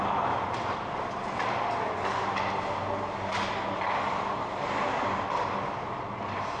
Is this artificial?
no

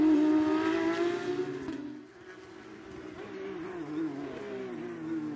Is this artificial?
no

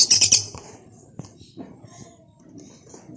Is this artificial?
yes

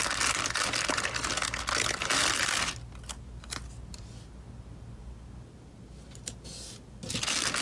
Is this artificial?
no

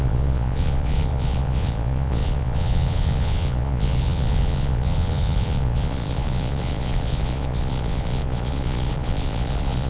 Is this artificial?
yes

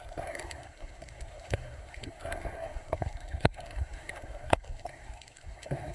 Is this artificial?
yes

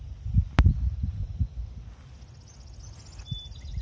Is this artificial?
no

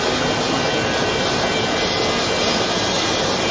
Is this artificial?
no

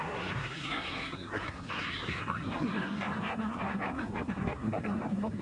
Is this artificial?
yes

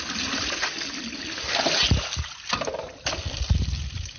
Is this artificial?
no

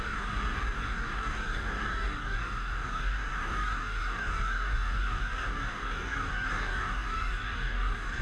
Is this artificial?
yes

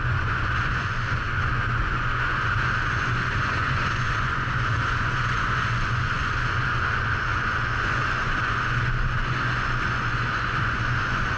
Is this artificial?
yes